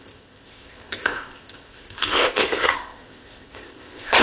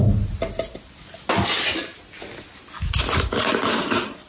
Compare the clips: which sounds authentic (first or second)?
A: second